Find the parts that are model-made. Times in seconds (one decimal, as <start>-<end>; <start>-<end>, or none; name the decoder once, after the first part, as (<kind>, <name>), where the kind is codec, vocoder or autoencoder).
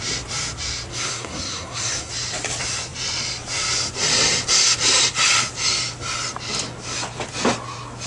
0.9-2.1 (codec, SNAC)